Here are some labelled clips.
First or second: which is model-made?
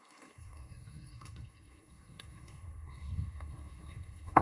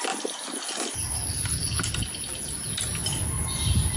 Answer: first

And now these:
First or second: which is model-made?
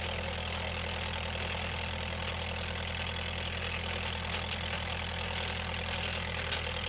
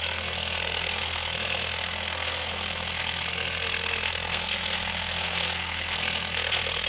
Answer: second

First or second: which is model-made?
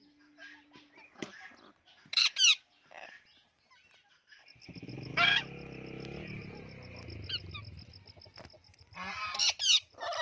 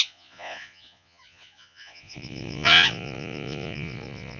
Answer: second